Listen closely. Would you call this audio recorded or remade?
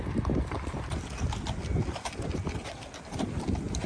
recorded